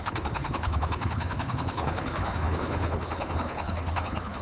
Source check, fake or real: fake